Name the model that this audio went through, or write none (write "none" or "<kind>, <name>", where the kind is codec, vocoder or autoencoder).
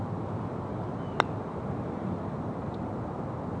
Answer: none